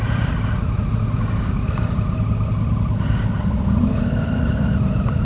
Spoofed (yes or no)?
no